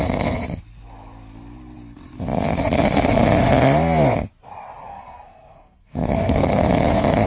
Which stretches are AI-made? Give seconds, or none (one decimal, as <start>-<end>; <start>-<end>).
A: 4.9-6.6